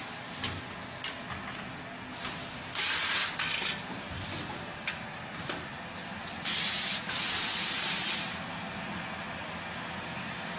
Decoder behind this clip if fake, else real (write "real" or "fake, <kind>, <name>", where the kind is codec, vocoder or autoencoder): real